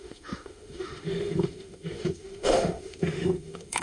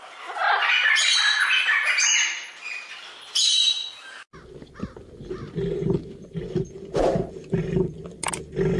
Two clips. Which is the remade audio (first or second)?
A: first